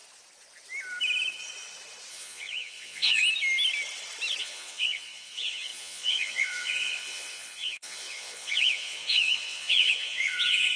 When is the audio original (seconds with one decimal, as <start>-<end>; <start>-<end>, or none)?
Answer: 0.0-2.1; 3.2-4.4